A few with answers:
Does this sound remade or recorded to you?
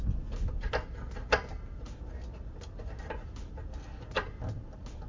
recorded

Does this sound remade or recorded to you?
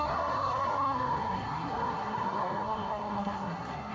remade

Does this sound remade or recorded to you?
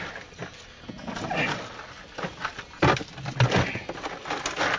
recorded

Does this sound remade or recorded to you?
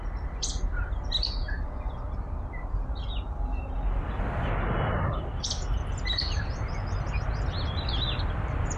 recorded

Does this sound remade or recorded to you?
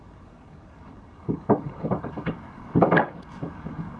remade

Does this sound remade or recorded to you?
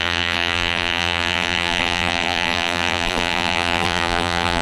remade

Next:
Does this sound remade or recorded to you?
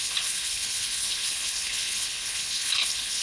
remade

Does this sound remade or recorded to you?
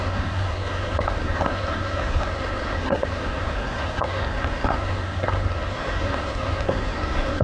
remade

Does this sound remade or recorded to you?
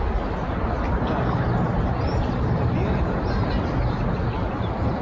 recorded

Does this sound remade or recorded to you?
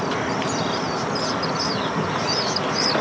recorded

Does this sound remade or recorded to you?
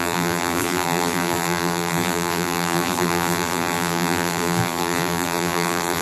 remade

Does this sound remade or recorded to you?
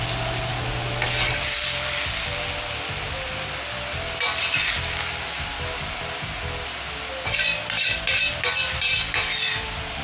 recorded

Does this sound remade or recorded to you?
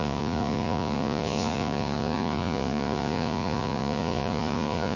remade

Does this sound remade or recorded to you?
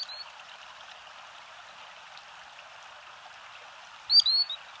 recorded